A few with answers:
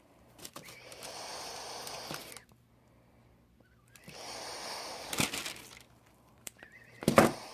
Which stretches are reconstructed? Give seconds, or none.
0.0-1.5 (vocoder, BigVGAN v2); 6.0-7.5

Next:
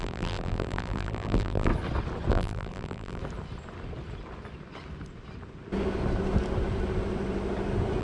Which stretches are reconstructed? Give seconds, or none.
0.0-1.7 (vocoder, BigVGAN v2); 2.3-3.2

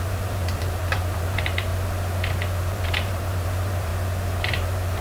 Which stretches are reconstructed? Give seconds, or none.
0.0-1.7 (vocoder, BigVGAN v2); 2.6-3.9; 4.4-5.0